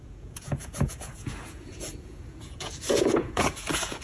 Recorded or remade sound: remade